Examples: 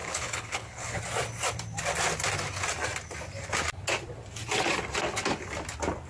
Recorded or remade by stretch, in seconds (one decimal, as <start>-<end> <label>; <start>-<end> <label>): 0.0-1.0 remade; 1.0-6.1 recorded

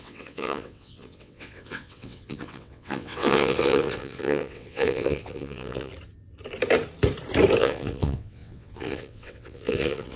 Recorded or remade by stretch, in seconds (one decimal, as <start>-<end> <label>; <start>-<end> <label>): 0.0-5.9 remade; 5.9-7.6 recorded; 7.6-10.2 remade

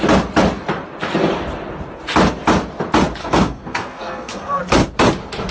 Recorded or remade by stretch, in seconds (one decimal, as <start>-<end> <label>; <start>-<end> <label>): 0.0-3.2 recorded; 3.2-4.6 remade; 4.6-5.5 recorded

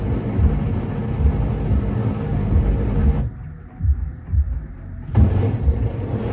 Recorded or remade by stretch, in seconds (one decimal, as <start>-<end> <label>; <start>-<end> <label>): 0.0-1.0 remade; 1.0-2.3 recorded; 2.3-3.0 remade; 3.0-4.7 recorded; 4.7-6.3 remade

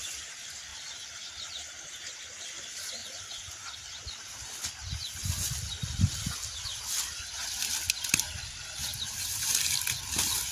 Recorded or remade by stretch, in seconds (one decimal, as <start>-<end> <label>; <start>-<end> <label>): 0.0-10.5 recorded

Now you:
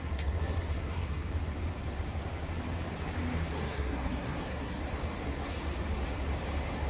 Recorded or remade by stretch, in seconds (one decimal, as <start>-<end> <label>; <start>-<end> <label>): 0.0-1.3 remade; 1.3-3.5 recorded; 3.5-4.8 remade; 4.8-6.9 recorded

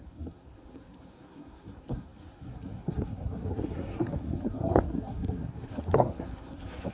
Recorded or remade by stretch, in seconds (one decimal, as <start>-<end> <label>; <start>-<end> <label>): 0.0-6.9 remade